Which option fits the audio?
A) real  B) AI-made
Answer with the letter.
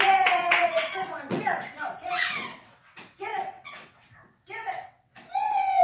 B